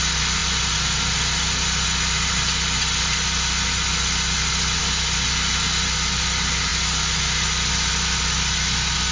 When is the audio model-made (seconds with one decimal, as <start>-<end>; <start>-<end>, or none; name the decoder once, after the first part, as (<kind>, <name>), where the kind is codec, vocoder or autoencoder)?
none